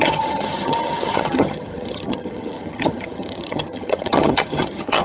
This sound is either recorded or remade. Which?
remade